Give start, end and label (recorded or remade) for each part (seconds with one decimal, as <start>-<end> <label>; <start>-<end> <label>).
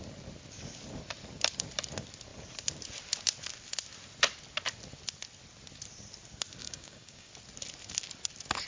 0.0-6.6 recorded; 6.6-7.3 remade; 7.3-8.7 recorded